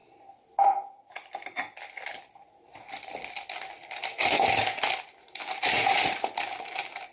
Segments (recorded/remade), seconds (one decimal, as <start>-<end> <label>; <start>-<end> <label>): 0.0-7.1 recorded

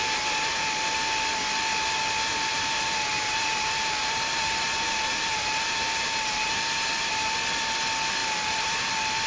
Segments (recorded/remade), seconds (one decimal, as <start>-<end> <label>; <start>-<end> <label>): 0.0-0.7 remade; 0.7-2.5 recorded; 2.5-7.1 remade; 7.1-8.2 recorded; 8.2-8.9 remade; 8.9-9.3 recorded